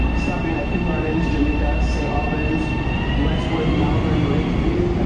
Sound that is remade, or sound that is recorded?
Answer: recorded